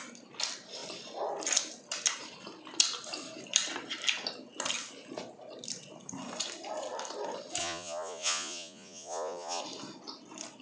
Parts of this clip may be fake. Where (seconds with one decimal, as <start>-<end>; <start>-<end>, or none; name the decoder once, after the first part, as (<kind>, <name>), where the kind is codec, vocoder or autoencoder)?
7.6-9.6 (vocoder, Vocos)